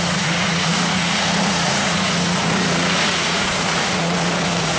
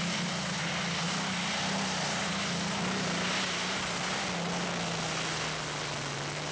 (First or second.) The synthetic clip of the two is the first